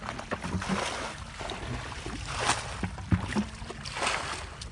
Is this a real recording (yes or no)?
yes